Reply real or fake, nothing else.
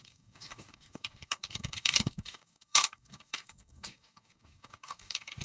fake